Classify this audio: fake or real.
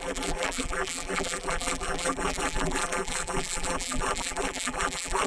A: fake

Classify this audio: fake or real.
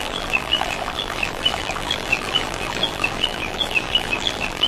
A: fake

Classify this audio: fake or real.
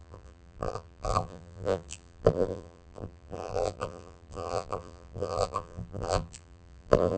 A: fake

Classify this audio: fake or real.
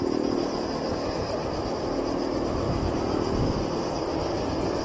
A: real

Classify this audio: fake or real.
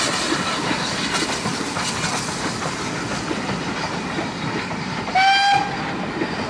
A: real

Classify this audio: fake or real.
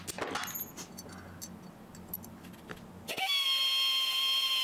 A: real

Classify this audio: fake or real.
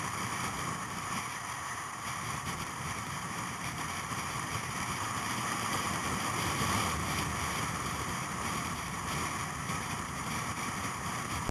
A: fake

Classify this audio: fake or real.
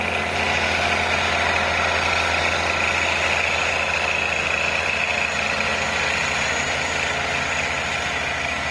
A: real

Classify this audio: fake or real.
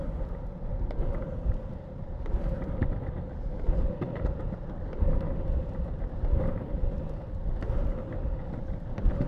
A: real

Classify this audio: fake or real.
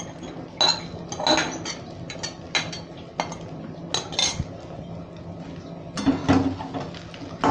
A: real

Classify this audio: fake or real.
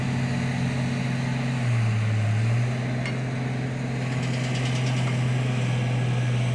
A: real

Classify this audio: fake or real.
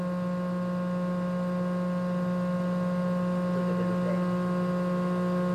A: real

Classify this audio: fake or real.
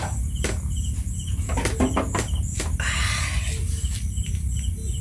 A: real